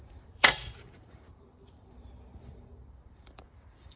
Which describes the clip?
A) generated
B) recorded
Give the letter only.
A